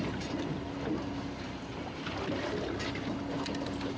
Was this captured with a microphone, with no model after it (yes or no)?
yes